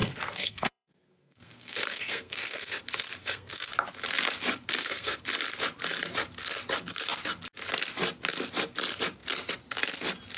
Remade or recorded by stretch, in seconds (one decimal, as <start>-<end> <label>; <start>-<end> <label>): 0.0-2.8 remade; 2.8-3.2 recorded; 3.2-3.7 remade; 3.7-4.7 recorded; 4.7-5.2 remade; 5.2-10.4 recorded